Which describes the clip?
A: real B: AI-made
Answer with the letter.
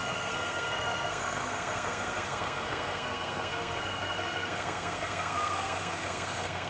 B